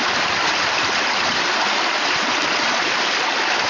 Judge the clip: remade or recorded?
recorded